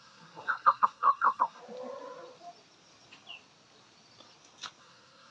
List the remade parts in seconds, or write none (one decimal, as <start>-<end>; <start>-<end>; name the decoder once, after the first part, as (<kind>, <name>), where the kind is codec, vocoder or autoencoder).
0.0-1.6 (codec, SNAC); 4.8-5.3